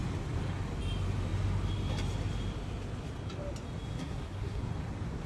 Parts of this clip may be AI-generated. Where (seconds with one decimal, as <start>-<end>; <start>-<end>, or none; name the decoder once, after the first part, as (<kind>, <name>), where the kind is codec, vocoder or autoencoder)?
4.0-4.7 (codec, SNAC)

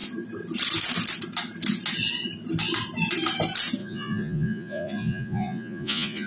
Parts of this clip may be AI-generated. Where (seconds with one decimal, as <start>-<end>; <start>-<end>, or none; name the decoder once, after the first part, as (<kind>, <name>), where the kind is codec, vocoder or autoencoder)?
3.8-6.3 (vocoder, Vocos)